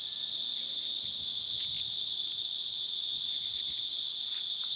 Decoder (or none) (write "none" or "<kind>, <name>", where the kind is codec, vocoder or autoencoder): none